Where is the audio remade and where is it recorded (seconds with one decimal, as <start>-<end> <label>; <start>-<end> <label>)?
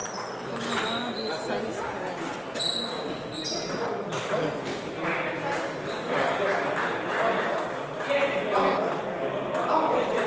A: 0.0-10.3 recorded